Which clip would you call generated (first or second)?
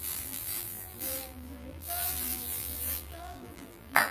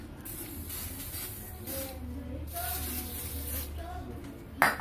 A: first